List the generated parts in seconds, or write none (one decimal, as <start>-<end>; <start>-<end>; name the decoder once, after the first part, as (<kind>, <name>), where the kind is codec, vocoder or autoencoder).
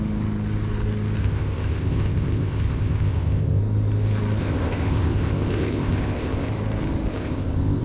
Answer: 1.2-3.6 (codec, ZipCodec); 4.4-6.5; 7.1-7.8